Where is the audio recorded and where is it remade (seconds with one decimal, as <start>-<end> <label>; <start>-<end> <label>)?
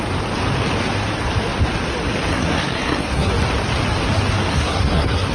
0.0-2.3 recorded; 2.3-3.3 remade; 3.3-4.5 recorded; 4.5-5.3 remade